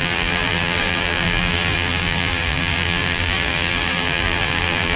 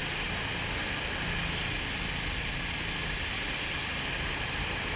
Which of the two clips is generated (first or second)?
first